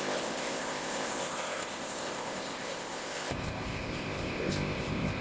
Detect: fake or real fake